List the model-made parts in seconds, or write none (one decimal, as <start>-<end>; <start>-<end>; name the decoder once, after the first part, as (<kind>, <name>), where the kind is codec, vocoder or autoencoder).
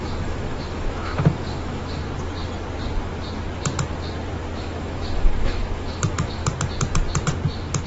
0.0-2.0 (autoencoder, DAC-VAE); 4.6-6.4